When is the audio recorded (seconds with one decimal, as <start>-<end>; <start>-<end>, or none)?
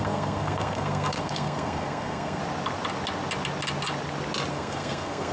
2.4-4.5